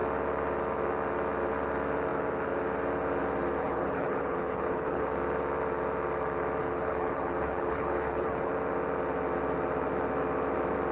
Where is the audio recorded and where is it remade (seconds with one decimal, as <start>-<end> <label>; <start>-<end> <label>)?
0.0-3.6 recorded; 3.6-5.1 remade; 5.1-6.6 recorded; 6.6-8.5 remade; 8.5-10.9 recorded